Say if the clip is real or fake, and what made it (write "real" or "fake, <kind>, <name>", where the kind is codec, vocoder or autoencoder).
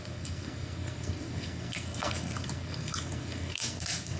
fake, codec, SNAC